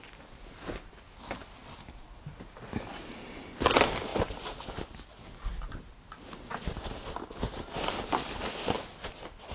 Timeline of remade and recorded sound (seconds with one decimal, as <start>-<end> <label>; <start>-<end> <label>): 0.0-1.6 recorded; 1.6-2.5 remade; 2.5-4.1 recorded; 4.1-4.8 remade; 4.8-5.5 recorded; 5.5-6.0 remade; 6.0-9.5 recorded